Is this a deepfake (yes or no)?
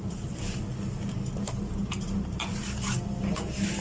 no